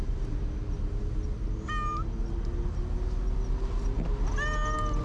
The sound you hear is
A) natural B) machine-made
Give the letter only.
A